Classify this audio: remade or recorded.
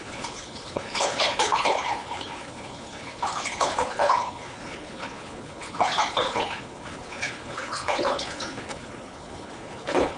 remade